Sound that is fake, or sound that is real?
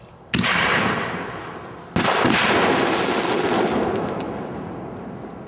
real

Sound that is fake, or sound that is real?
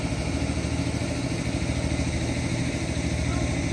real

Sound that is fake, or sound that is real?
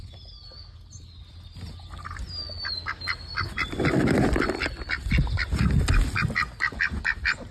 real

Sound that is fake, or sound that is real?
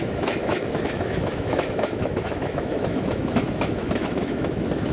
fake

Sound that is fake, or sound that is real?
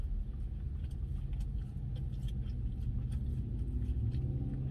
real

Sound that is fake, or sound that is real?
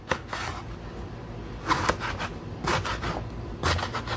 real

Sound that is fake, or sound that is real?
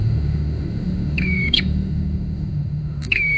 fake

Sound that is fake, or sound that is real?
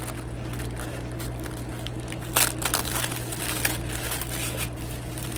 real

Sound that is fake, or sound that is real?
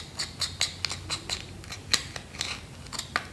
real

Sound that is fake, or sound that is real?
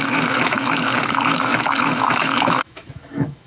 fake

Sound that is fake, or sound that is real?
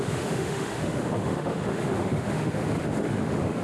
fake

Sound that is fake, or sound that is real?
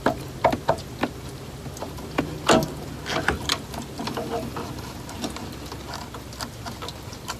real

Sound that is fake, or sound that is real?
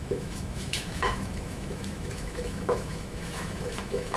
fake